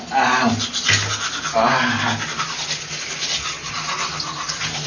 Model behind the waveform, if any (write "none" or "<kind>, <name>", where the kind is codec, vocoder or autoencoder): none